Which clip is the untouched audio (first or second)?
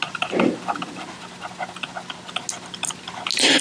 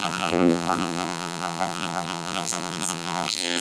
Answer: first